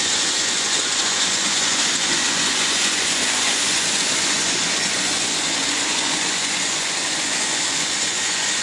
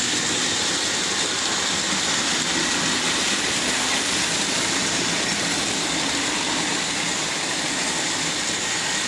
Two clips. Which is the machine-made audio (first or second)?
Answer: first